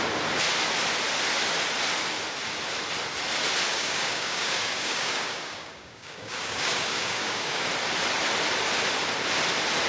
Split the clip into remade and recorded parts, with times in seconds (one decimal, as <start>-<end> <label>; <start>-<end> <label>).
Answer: 0.0-3.7 recorded; 3.7-7.7 remade; 7.7-9.9 recorded